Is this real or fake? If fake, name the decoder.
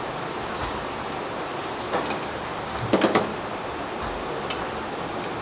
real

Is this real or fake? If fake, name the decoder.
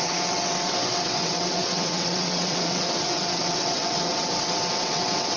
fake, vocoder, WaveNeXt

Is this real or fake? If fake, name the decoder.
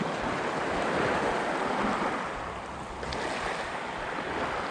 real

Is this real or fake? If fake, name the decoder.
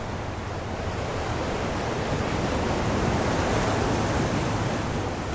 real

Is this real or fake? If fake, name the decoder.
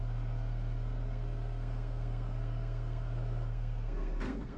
fake, codec, SNAC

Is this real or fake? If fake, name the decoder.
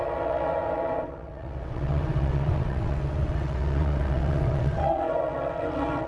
fake, vocoder, WaveNeXt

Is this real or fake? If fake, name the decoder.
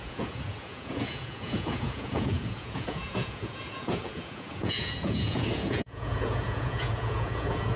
fake, vocoder, Vocos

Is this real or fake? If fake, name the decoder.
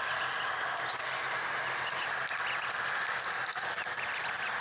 fake, vocoder, BigVGAN v2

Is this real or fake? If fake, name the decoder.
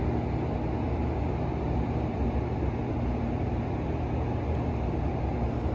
real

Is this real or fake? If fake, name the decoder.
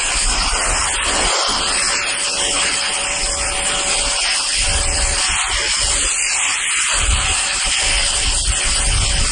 fake, vocoder, BigVGAN v2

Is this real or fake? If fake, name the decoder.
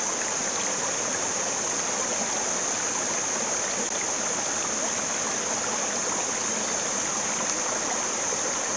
real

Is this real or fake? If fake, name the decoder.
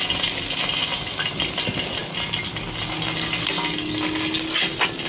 real